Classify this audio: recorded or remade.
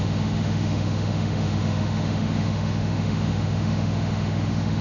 remade